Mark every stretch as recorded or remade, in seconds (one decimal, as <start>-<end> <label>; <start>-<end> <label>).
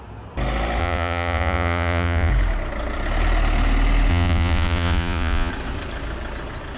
0.0-0.8 recorded; 0.8-2.3 remade; 2.3-4.1 recorded; 4.1-5.5 remade; 5.5-6.8 recorded